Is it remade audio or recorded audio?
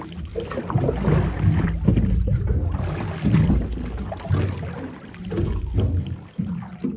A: recorded